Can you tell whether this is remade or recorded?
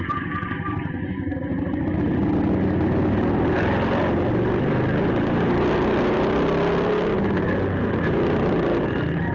recorded